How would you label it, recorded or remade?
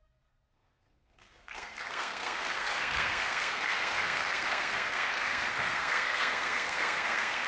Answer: remade